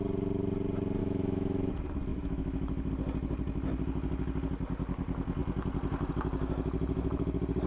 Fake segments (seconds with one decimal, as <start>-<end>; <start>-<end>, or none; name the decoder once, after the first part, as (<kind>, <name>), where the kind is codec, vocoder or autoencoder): 1.0-1.7 (autoencoder, DAC-VAE); 2.1-2.9